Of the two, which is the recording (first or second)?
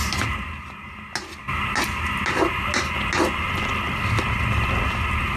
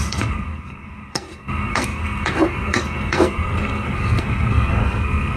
first